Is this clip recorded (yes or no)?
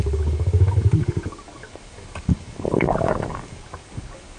no